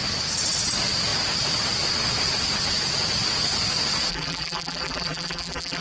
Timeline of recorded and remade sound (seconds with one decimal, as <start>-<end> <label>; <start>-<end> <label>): 0.0-4.1 recorded; 4.1-5.8 remade